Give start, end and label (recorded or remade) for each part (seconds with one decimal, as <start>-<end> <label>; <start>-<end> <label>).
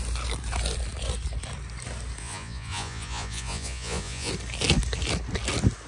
0.0-2.2 recorded; 2.2-4.3 remade; 4.3-5.9 recorded